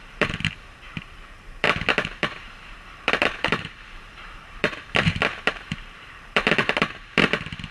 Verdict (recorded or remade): remade